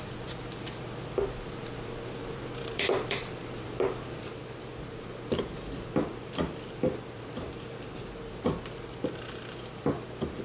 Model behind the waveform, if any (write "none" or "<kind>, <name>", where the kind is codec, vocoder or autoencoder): vocoder, BigVGAN v2